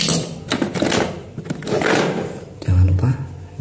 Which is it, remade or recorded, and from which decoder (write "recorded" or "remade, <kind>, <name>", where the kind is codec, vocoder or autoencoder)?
recorded